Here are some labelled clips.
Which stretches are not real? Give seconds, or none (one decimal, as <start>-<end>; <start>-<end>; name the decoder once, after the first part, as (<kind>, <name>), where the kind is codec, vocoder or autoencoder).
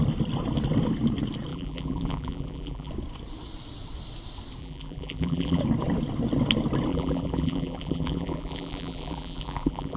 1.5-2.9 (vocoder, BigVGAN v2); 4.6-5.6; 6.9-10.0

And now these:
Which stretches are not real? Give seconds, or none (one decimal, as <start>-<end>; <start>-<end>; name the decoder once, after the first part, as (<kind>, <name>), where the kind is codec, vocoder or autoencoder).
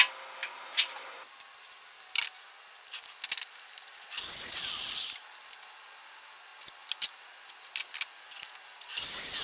none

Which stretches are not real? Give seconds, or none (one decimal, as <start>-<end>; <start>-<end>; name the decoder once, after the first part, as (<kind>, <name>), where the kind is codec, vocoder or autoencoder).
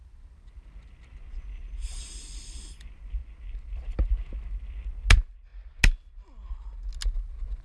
none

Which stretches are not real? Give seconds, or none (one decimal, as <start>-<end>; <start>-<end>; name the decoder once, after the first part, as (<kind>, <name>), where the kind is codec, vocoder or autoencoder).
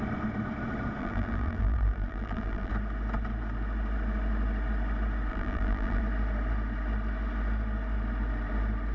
1.0-2.7 (vocoder, BigVGAN v2); 5.3-6.0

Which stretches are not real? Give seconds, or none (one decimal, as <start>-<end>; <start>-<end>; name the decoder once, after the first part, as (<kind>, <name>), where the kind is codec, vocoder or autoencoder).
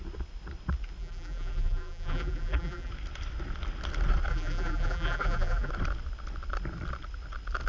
1.0-2.9 (vocoder, BigVGAN v2); 4.3-5.7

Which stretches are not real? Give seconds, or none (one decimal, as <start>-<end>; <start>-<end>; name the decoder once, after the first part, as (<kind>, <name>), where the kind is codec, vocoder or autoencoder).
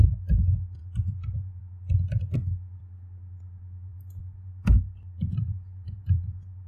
0.8-1.6 (vocoder, BigVGAN v2); 3.9-6.7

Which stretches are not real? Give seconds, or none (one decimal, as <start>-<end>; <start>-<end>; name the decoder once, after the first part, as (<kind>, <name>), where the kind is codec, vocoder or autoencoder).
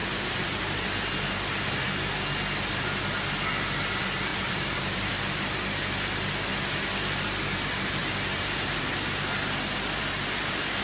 0.0-0.6 (vocoder, BigVGAN v2); 4.3-5.1; 8.0-8.8